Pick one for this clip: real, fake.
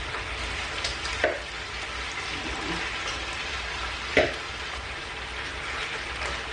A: real